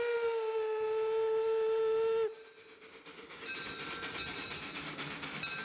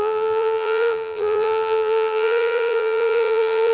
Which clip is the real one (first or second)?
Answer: first